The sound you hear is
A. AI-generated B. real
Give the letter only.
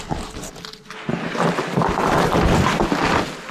B